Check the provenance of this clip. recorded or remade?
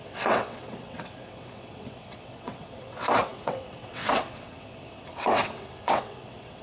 remade